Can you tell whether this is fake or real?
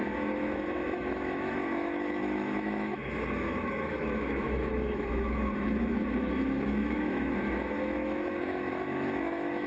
fake